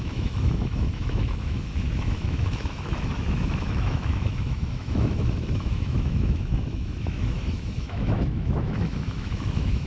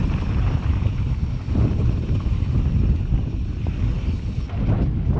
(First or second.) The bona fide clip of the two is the second